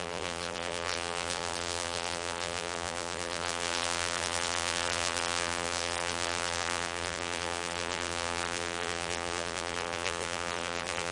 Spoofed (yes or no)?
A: yes